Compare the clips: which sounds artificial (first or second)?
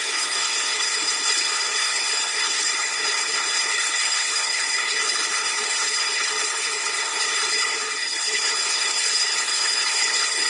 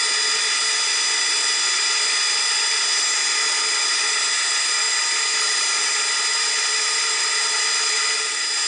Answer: first